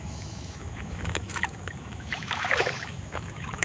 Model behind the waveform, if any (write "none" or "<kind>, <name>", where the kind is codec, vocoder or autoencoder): autoencoder, DAC-VAE